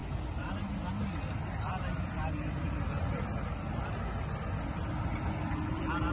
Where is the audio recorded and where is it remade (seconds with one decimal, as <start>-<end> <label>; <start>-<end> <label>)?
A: 0.0-6.1 recorded